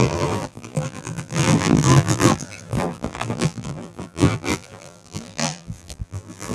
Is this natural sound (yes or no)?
no